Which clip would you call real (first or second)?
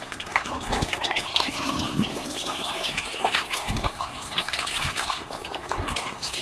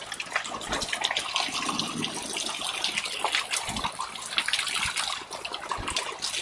second